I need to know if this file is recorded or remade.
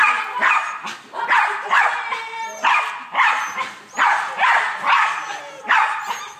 recorded